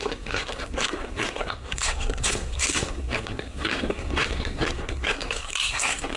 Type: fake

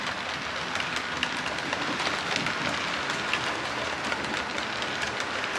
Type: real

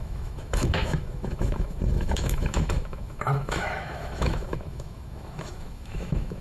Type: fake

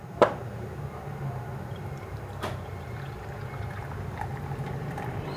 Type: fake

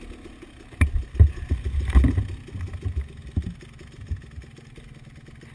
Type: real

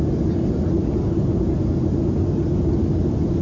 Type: real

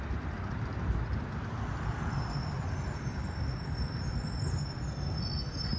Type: real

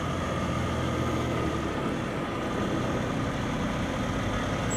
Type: real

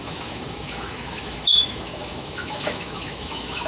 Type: fake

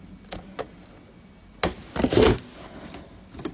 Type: real